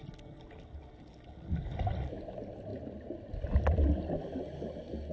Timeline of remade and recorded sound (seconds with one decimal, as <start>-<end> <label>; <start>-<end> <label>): 0.0-5.1 recorded